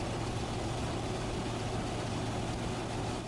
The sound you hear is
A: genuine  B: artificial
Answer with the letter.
A